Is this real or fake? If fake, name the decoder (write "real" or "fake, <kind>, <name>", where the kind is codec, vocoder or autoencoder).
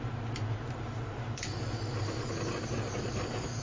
real